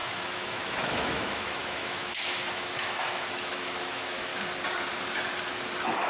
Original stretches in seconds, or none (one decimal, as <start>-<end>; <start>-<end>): 4.3-6.1